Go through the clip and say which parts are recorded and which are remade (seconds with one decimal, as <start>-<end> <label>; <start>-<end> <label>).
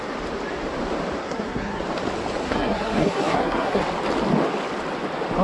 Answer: 0.0-1.2 recorded; 1.2-1.8 remade; 1.8-2.4 recorded; 2.4-3.8 remade; 3.8-5.4 recorded